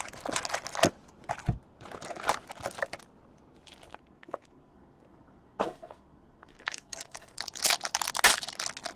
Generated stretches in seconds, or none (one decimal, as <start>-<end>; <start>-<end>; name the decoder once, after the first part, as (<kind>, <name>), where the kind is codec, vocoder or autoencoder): 3.9-7.4 (codec, SNAC)